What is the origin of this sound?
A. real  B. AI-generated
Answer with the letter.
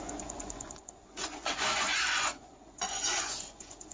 B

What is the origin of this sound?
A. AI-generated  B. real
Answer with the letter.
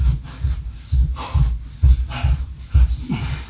B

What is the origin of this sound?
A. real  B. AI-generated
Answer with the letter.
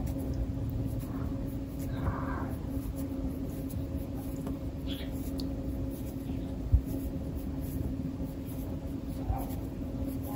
A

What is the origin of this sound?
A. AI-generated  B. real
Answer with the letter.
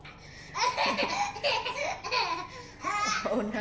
B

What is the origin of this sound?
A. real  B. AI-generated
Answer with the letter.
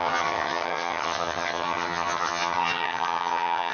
B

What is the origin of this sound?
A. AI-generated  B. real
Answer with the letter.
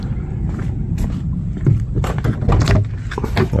B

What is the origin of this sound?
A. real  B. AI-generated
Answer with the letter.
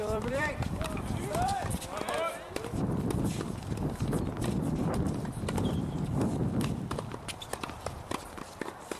B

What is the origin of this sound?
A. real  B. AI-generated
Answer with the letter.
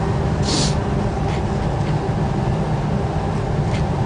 A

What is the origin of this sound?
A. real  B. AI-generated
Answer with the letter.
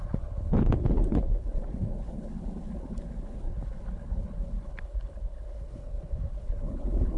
B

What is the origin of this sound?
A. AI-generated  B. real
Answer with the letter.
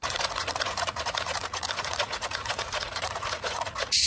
A